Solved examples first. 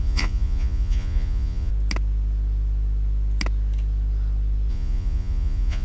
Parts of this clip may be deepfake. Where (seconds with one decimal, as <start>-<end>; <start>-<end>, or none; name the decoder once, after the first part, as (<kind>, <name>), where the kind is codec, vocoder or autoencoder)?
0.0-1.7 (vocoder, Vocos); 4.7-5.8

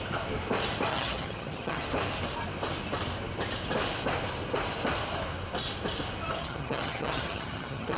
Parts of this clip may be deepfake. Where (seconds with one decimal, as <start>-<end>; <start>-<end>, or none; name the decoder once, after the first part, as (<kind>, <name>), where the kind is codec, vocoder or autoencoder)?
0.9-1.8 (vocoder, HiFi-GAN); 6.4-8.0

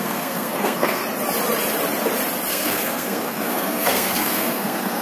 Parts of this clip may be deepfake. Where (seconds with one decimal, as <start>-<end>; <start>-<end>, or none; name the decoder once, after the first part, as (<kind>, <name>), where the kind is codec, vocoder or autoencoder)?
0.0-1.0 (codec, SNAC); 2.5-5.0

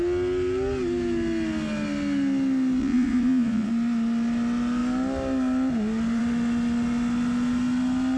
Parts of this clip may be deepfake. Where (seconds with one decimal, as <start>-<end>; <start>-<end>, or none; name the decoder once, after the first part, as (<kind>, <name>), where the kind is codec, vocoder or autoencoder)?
2.8-3.7 (vocoder, Vocos)

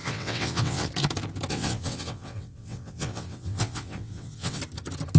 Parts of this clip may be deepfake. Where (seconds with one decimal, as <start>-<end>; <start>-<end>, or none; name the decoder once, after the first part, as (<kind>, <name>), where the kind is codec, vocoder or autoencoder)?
0.0-0.9 (vocoder, WaveNeXt); 1.5-4.6

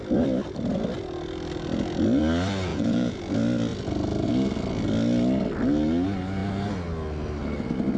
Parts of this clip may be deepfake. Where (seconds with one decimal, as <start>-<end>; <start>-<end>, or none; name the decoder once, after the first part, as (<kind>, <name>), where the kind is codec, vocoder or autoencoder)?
2.7-3.2 (vocoder, Vocos)